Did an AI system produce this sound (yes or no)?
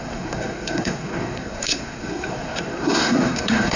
yes